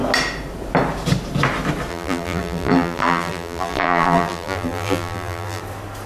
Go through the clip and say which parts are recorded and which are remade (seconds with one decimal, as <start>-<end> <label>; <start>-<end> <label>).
0.0-1.9 recorded; 1.9-5.6 remade; 5.6-6.1 recorded